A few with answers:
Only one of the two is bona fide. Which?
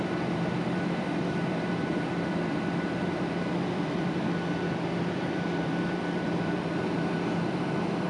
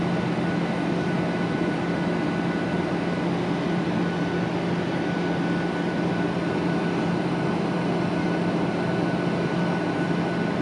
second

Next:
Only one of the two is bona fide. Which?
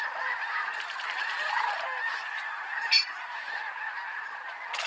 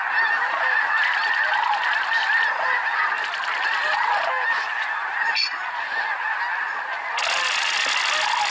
second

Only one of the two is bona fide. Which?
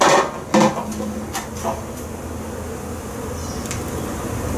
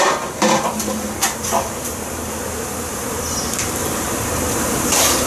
first